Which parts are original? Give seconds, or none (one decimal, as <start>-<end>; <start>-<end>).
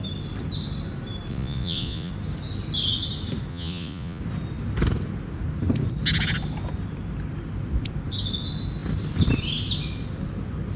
0.0-1.3; 2.1-3.5; 4.2-10.8